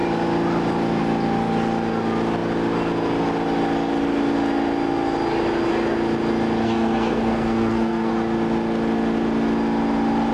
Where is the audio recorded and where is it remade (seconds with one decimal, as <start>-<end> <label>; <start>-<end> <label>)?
0.0-6.6 recorded; 6.6-8.1 remade; 8.1-10.3 recorded